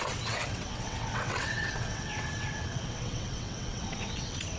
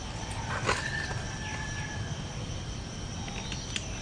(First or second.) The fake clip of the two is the first